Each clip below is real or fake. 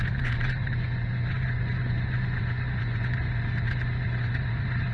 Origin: fake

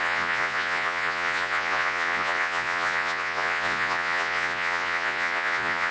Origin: fake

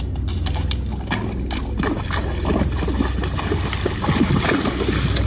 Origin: real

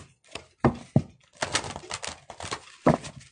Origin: real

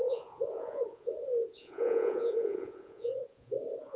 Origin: fake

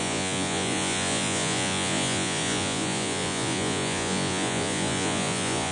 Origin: fake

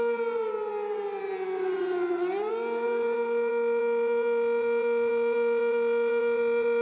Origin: fake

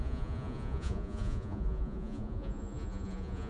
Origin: fake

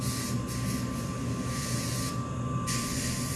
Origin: real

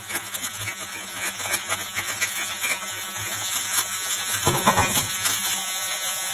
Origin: fake